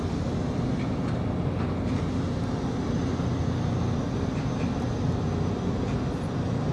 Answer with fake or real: real